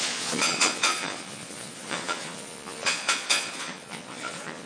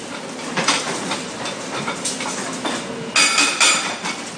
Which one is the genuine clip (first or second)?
second